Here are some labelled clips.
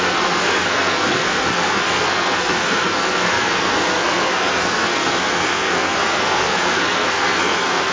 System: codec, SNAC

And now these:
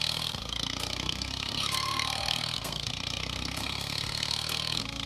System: codec, SNAC